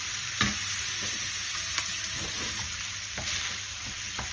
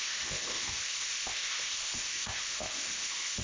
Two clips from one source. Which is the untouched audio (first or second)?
first